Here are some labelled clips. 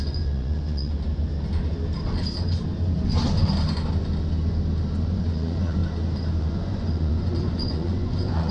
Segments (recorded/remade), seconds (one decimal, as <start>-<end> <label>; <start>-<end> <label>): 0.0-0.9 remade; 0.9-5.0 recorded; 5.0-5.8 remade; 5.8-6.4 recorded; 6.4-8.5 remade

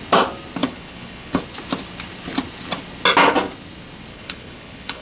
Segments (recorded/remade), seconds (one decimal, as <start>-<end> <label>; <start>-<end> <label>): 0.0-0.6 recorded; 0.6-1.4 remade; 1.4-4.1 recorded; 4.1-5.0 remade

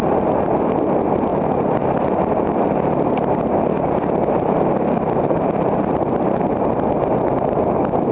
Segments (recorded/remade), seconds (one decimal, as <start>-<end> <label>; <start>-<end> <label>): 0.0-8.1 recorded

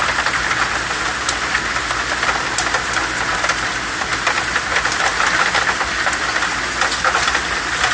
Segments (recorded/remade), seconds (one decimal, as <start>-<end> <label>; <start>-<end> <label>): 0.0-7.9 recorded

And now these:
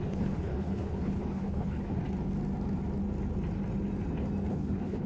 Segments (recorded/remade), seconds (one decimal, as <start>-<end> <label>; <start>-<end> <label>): 0.0-2.0 remade; 2.0-4.5 recorded; 4.5-5.1 remade

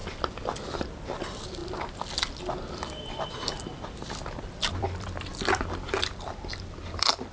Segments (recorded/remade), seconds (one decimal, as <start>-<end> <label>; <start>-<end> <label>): 0.0-7.3 remade

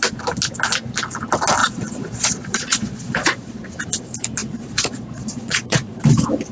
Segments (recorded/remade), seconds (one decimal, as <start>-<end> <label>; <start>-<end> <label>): 0.0-1.6 recorded; 1.6-3.7 remade; 3.7-4.4 recorded; 4.4-6.0 remade; 6.0-6.5 recorded